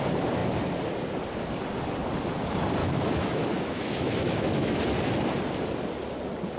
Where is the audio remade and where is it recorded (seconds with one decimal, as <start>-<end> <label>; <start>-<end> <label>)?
0.0-2.8 recorded; 2.8-4.8 remade; 4.8-6.6 recorded